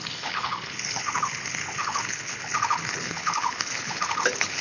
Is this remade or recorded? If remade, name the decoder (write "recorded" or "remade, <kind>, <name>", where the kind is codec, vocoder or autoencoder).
remade, codec, HILCodec